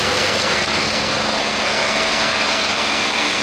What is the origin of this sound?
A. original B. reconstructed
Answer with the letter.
B